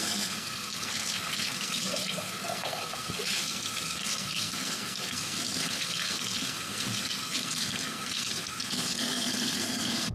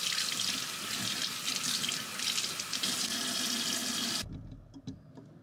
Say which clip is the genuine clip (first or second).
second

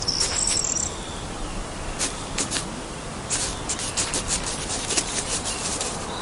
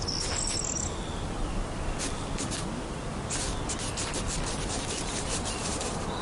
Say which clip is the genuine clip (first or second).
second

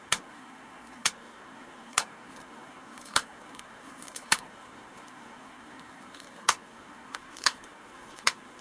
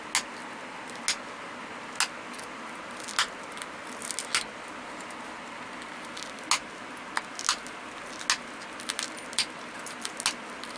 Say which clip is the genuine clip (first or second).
second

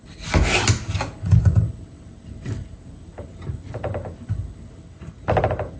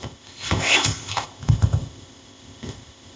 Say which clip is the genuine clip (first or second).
first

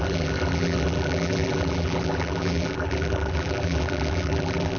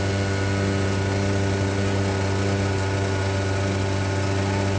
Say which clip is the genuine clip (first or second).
second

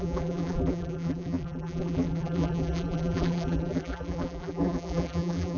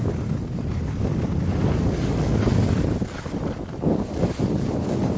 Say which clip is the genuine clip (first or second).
second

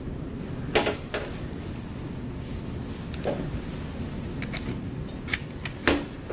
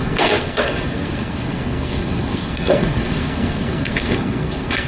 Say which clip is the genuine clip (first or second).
first